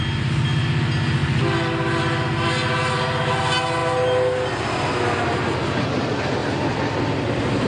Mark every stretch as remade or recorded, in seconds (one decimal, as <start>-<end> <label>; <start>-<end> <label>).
0.0-6.4 recorded; 6.4-7.0 remade; 7.0-7.7 recorded